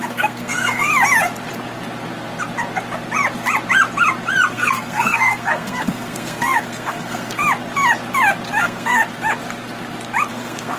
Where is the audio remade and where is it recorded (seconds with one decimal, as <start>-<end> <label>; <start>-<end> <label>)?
0.0-0.9 remade; 0.9-4.5 recorded; 4.5-7.4 remade; 7.4-8.6 recorded; 8.6-9.0 remade; 9.0-10.3 recorded; 10.3-10.8 remade